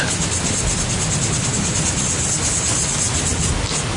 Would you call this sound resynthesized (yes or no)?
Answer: no